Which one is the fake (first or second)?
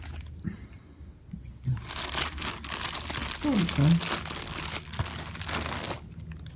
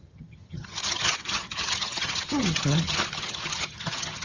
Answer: second